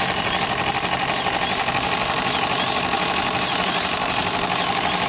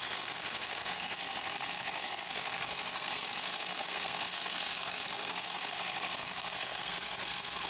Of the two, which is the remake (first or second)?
second